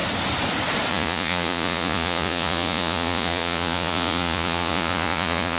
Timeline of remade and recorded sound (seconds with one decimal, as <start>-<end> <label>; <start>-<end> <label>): 0.0-0.9 recorded; 0.9-5.6 remade